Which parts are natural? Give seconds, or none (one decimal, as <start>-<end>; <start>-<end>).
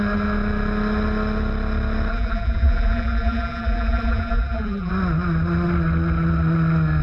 0.0-2.1; 4.9-7.0